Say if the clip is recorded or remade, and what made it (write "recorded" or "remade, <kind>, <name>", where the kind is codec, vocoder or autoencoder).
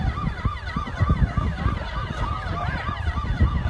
recorded